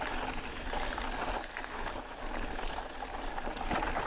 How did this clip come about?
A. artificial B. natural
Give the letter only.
B